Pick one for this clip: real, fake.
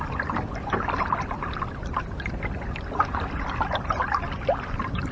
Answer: real